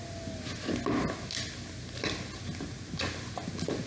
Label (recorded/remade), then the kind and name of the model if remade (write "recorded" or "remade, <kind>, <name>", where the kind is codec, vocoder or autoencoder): recorded